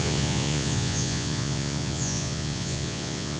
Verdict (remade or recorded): remade